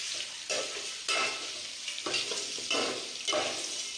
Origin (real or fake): real